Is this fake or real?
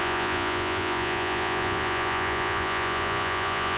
fake